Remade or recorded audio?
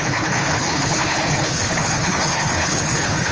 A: remade